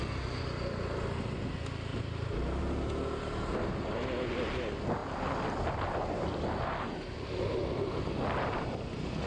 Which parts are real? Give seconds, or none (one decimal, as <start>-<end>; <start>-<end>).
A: 0.0-1.9; 2.6-9.3